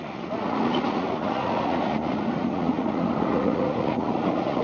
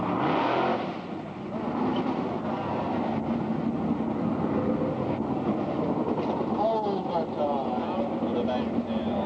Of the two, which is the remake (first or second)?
first